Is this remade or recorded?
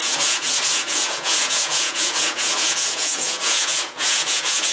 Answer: remade